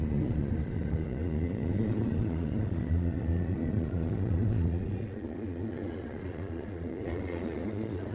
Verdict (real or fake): fake